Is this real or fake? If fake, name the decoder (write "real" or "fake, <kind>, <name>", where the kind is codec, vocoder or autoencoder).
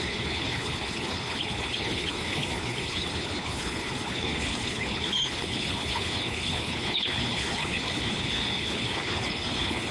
fake, codec, HILCodec